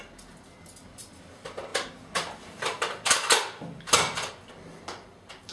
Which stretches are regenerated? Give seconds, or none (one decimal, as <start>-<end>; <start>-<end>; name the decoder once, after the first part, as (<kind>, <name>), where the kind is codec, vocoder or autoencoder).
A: none